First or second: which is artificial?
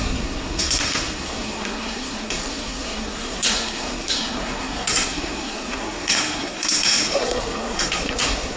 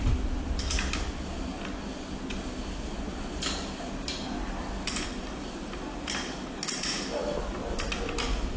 first